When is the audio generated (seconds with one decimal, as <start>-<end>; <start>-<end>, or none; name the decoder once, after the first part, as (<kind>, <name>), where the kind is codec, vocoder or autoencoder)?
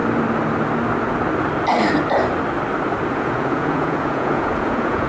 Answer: 3.1-5.1 (vocoder, Vocos)